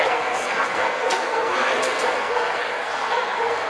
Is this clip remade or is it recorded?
remade